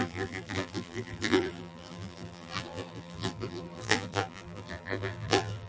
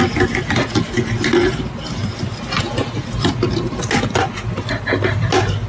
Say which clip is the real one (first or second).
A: second